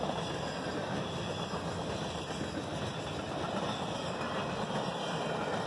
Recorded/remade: recorded